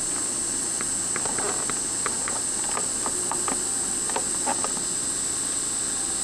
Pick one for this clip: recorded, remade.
recorded